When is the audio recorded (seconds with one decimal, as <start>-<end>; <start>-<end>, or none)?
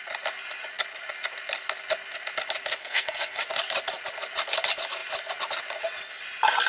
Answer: 0.0-2.8; 3.4-6.7